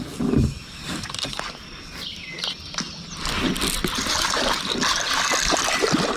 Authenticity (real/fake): real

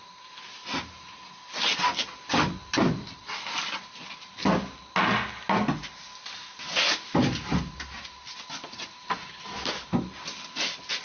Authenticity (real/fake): real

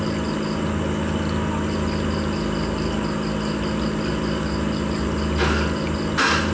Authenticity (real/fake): real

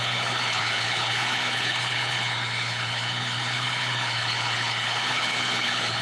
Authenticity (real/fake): fake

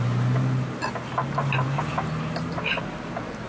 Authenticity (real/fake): real